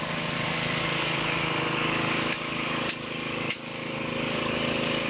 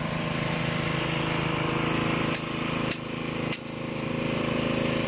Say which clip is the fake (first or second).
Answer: first